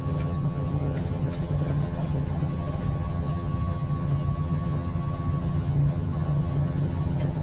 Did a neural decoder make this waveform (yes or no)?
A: yes